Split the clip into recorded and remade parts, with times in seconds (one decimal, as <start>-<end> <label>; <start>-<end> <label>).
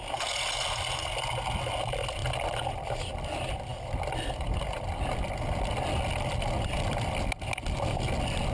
0.0-8.5 recorded